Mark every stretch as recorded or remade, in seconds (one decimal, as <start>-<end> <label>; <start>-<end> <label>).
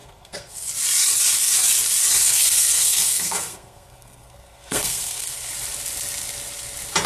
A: 0.0-0.7 remade; 0.7-2.2 recorded; 2.2-5.5 remade; 5.5-7.1 recorded